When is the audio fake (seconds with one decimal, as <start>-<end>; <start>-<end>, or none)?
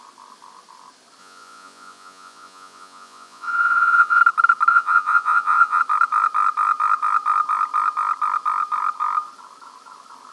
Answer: 1.2-4.2; 4.7-5.8